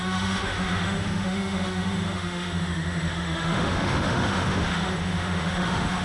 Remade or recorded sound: remade